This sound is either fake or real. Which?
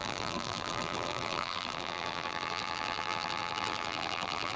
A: fake